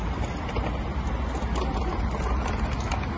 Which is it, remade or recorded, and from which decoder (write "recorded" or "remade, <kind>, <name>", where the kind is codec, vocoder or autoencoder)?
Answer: recorded